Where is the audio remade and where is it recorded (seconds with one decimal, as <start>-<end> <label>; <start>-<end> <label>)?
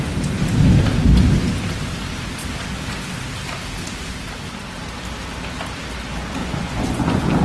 0.0-6.4 recorded; 6.4-7.4 remade